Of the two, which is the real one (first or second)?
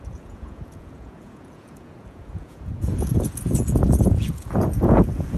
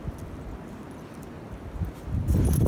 second